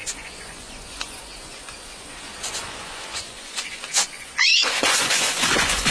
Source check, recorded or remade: remade